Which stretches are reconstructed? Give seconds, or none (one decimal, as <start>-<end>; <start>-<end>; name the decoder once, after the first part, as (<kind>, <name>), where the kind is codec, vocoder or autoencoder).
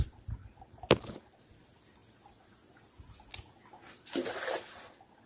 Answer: 0.4-1.4 (vocoder, BigVGAN v2)